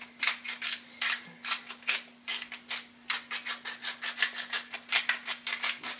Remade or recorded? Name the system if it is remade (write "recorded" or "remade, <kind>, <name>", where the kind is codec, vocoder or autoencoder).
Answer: recorded